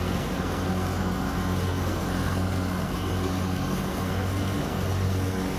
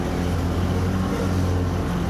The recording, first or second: second